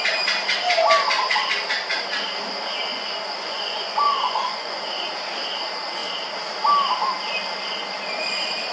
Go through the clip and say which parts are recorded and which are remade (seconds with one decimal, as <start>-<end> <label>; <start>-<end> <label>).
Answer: 0.0-2.9 recorded; 2.9-4.8 remade; 4.8-8.7 recorded